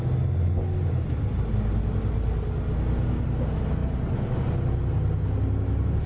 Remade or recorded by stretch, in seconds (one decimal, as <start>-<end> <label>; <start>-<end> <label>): 0.0-3.8 recorded; 3.8-4.4 remade; 4.4-6.1 recorded